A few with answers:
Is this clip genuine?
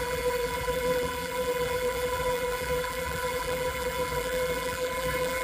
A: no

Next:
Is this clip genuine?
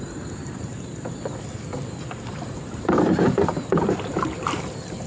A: no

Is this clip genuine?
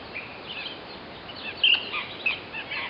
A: yes